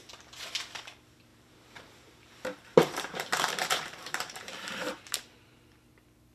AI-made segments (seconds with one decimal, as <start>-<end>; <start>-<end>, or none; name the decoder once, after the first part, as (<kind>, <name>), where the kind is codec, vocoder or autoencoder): 1.3-5.1 (vocoder, BigVGAN v2)

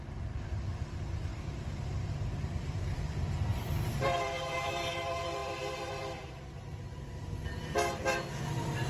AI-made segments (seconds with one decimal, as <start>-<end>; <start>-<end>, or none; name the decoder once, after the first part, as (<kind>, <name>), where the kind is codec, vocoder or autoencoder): 0.0-8.9 (vocoder, BigVGAN v2)

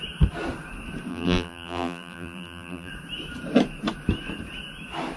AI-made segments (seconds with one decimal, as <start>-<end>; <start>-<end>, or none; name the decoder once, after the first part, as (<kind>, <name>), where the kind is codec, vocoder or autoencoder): 1.1-2.9 (vocoder, BigVGAN v2)

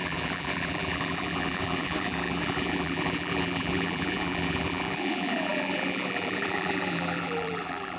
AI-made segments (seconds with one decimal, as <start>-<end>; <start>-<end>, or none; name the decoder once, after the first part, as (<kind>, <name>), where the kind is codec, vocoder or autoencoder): 0.0-8.0 (vocoder, BigVGAN v2)

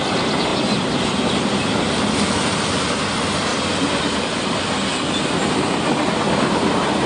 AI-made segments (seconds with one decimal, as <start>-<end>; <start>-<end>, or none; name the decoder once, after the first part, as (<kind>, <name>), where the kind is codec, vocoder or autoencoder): 0.5-1.3 (vocoder, BigVGAN v2); 3.5-4.2

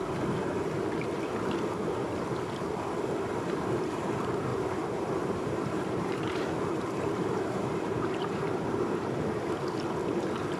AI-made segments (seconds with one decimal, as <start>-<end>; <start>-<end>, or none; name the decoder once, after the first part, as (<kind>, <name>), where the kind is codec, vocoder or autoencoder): 4.5-9.2 (vocoder, BigVGAN v2)